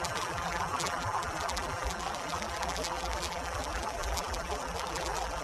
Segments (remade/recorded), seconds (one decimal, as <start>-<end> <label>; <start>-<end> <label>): 0.0-5.4 remade